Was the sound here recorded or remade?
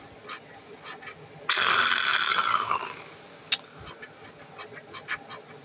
recorded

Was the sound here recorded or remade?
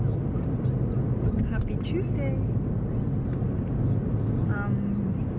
recorded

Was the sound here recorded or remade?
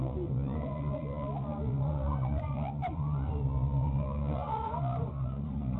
remade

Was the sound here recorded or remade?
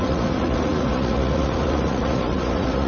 remade